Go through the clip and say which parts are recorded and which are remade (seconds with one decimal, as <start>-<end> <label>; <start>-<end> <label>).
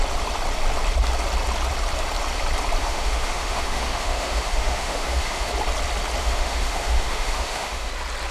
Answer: 0.0-2.8 recorded; 2.8-5.5 remade; 5.5-6.2 recorded; 6.2-7.9 remade; 7.9-8.3 recorded